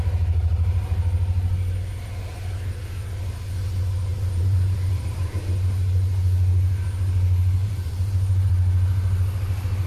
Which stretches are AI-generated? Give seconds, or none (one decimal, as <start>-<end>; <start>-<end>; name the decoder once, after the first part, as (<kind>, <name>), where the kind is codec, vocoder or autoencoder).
4.1-5.4 (vocoder, BigVGAN v2); 7.6-8.5